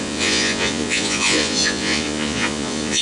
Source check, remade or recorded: remade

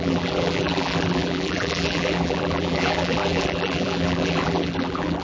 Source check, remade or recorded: remade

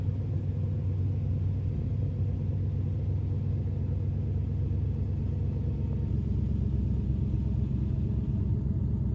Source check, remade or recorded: recorded